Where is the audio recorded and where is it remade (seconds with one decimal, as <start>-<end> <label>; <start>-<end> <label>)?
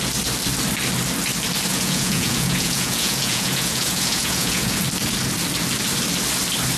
0.0-1.7 recorded; 1.7-4.8 remade; 4.8-6.8 recorded